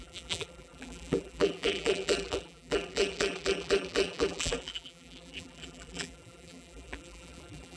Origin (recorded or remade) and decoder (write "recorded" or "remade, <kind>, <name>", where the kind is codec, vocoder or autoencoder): remade, vocoder, BigVGAN v2